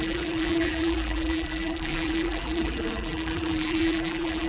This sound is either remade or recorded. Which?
remade